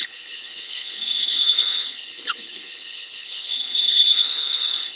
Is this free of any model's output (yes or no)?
no